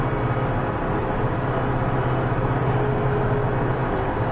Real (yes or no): yes